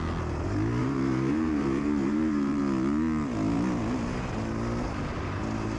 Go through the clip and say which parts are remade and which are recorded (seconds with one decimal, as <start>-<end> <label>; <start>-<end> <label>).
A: 0.0-0.8 recorded; 0.8-2.6 remade; 2.6-5.8 recorded

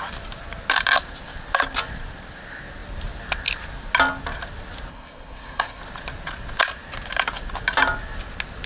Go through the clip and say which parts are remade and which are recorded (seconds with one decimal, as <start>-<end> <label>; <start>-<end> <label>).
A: 0.0-4.9 recorded; 4.9-5.8 remade; 5.8-8.7 recorded

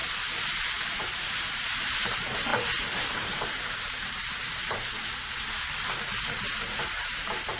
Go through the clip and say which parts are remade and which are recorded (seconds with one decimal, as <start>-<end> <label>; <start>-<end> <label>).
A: 0.0-0.8 recorded; 0.8-5.0 remade; 5.0-5.8 recorded; 5.8-7.6 remade

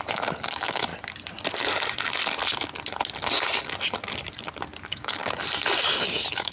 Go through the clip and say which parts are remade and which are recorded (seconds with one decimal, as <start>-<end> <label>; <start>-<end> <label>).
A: 0.0-0.9 remade; 0.9-4.8 recorded; 4.8-5.2 remade; 5.2-6.0 recorded; 6.0-6.5 remade